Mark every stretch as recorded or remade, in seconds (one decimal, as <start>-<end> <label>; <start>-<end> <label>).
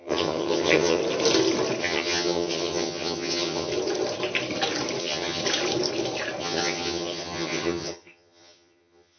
0.0-1.0 remade; 1.0-1.8 recorded; 1.8-3.7 remade; 3.7-5.0 recorded; 5.0-5.4 remade; 5.4-6.4 recorded; 6.4-9.2 remade